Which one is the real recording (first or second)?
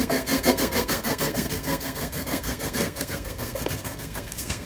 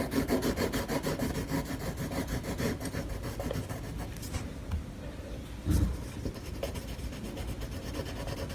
second